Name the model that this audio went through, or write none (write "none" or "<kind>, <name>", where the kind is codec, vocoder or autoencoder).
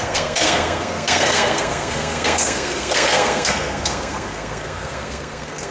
codec, SNAC